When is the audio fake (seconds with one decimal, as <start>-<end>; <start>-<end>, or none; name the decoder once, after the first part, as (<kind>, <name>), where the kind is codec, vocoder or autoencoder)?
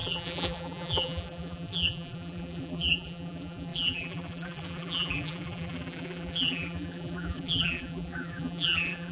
0.0-9.1 (vocoder, BigVGAN v2)